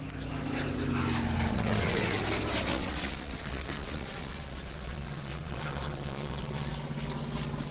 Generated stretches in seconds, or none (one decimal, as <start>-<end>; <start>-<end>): 1.5-2.2; 2.7-6.7